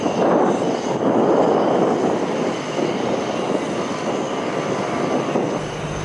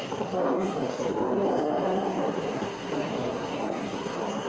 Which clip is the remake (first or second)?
second